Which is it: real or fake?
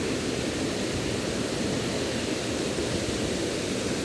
real